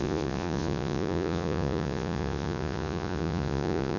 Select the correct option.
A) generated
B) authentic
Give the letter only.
A